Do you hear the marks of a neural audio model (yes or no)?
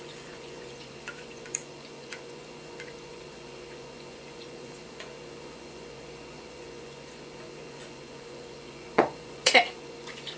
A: yes